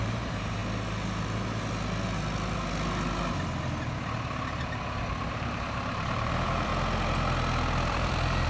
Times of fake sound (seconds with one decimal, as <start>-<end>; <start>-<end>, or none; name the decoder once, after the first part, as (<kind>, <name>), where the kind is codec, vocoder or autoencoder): 0.0-0.6 (vocoder, BigVGAN v2); 5.3-6.7; 7.9-8.5